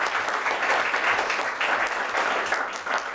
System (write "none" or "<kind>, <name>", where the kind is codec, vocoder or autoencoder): none